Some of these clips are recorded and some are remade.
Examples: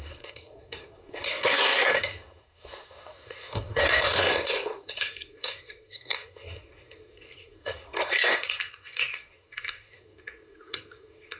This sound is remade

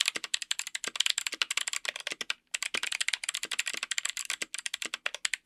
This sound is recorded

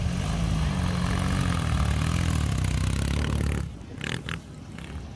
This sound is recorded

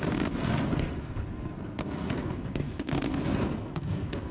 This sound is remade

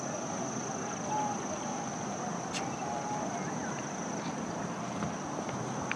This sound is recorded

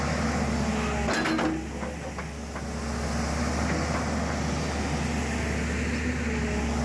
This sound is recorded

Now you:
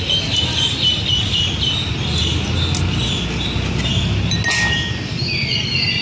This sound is recorded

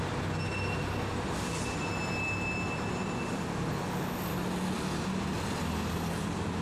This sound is recorded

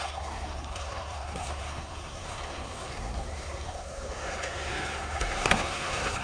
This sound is remade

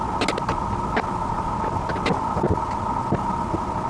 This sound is recorded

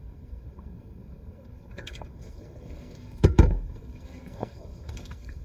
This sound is remade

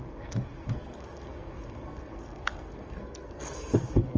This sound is remade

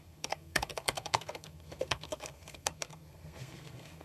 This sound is remade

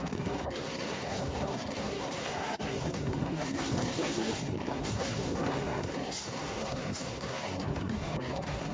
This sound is remade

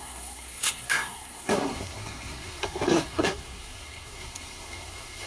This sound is remade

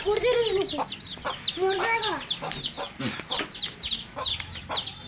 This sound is recorded